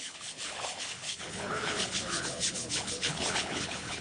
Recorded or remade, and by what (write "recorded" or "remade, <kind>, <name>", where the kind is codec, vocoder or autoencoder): remade, codec, HILCodec